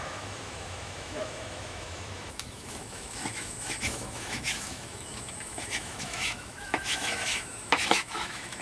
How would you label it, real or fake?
fake